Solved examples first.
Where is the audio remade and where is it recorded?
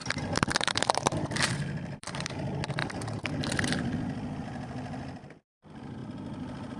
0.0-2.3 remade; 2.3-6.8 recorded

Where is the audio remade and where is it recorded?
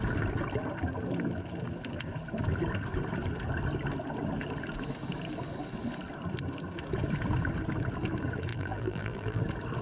0.0-8.5 recorded; 8.5-9.4 remade; 9.4-9.8 recorded